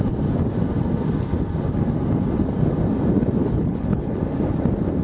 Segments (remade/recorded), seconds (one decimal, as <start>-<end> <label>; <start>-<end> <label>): 0.0-3.4 recorded; 3.4-4.2 remade; 4.2-5.0 recorded